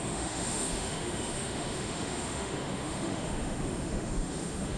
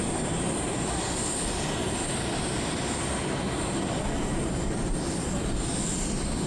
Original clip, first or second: second